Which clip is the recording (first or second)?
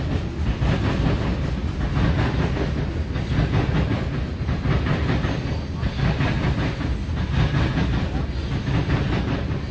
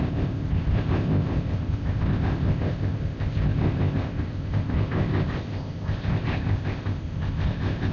first